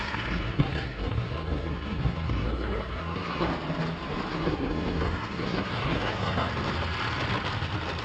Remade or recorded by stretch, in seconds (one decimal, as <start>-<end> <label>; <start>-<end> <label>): 0.0-3.5 remade; 3.5-4.3 recorded; 4.3-6.5 remade; 6.5-8.0 recorded